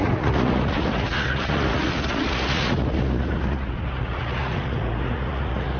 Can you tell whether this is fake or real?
fake